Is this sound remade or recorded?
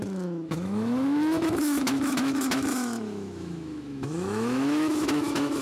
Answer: remade